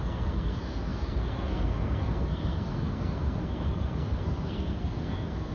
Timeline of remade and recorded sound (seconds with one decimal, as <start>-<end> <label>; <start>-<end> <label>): 0.0-5.5 remade

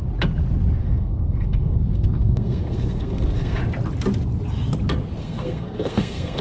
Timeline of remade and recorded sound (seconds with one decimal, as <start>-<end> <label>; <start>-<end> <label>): 0.0-0.8 recorded; 0.8-3.6 remade; 3.6-5.2 recorded; 5.2-6.4 remade

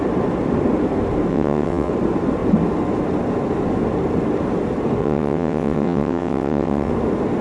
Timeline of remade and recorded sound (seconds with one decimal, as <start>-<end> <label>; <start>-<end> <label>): 0.0-1.3 recorded; 1.3-1.9 remade; 1.9-5.0 recorded; 5.0-6.9 remade; 6.9-7.4 recorded

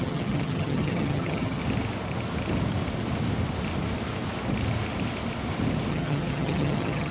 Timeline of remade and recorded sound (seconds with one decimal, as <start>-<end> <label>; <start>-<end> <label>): 0.0-1.6 remade; 1.6-5.9 recorded; 5.9-7.1 remade

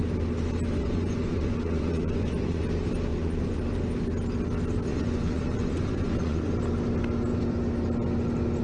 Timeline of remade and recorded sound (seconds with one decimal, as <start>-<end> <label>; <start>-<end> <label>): 0.0-0.8 recorded; 0.8-2.6 remade; 2.6-3.1 recorded; 3.1-3.6 remade; 3.6-4.9 recorded; 4.9-6.5 remade; 6.5-8.6 recorded

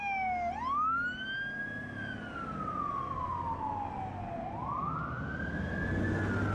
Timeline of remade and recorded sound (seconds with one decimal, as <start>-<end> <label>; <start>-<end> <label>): 0.0-6.5 recorded

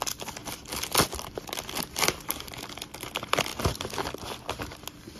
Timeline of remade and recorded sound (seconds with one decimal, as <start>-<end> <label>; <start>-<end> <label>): 0.0-0.4 recorded; 0.4-1.4 remade; 1.4-5.2 recorded